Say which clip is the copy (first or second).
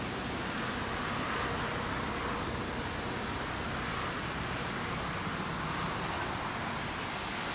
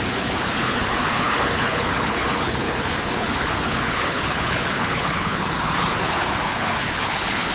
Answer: second